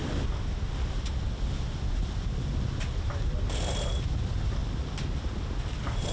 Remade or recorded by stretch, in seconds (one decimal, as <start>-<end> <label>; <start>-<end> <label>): 0.0-6.1 recorded